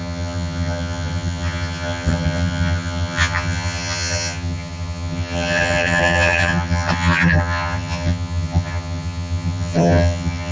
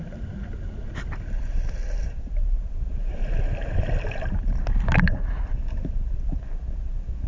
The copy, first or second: first